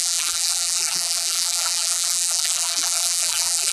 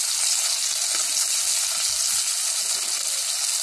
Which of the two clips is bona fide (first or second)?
second